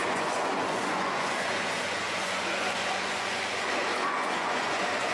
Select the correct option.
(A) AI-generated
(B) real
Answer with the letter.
A